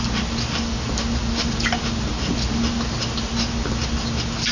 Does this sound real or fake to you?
real